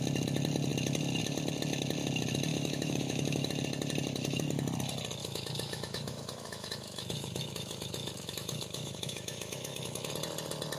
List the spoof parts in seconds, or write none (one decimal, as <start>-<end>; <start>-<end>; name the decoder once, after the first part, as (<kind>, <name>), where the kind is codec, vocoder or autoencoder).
2.5-3.5 (autoencoder, DAC-VAE); 5.2-10.1